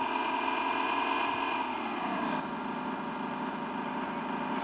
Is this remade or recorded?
recorded